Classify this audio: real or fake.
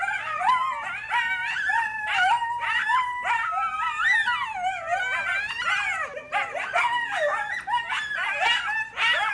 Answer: real